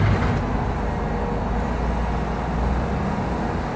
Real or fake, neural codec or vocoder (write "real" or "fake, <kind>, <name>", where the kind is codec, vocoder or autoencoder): real